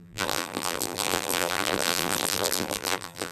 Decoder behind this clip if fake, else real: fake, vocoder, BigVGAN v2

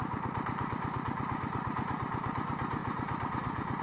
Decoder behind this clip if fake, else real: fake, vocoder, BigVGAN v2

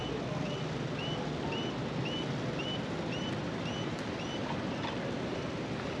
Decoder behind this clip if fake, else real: real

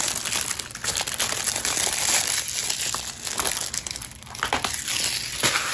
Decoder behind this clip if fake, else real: real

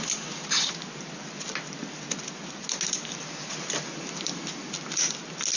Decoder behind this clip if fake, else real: real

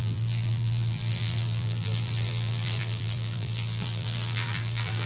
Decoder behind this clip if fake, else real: fake, vocoder, BigVGAN v2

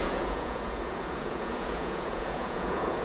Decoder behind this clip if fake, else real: fake, vocoder, Vocos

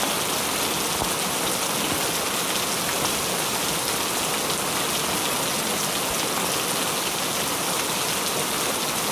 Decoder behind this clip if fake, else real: real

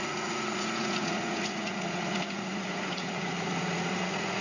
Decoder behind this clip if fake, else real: fake, vocoder, Vocos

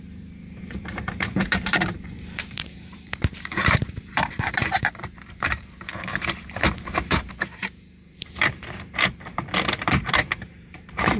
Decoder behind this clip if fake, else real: fake, vocoder, BigVGAN v2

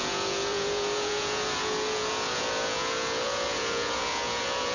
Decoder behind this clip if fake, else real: fake, vocoder, Vocos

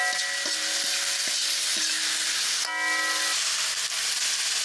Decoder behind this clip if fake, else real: real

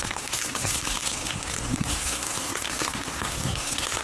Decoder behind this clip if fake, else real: fake, codec, SNAC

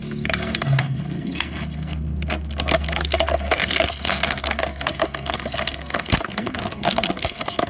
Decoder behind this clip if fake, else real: fake, codec, SNAC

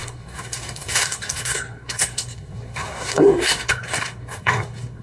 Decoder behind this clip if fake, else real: fake, codec, SNAC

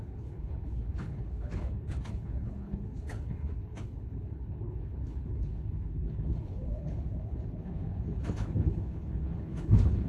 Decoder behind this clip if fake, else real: fake, codec, HILCodec